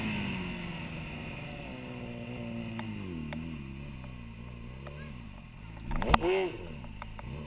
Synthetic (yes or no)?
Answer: no